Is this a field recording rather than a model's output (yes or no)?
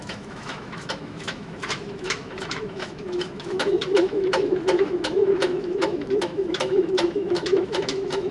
no